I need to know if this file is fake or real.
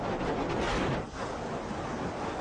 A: real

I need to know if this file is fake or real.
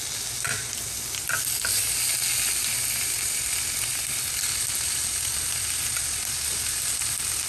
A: real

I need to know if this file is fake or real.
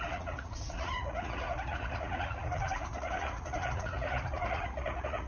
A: fake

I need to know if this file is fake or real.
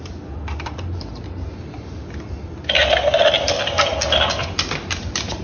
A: real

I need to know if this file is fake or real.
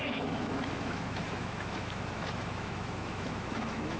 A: fake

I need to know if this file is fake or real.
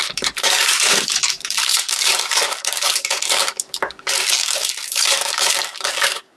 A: fake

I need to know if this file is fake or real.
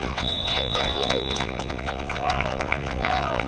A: fake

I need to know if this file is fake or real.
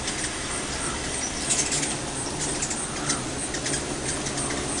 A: real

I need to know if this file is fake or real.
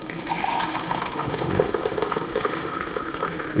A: fake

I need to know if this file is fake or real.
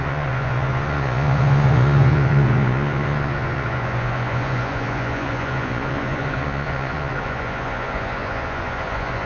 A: fake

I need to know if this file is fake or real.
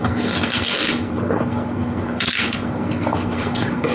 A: fake